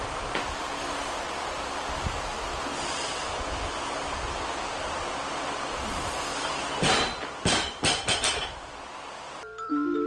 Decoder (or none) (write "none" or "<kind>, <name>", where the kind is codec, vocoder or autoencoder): vocoder, BigVGAN v2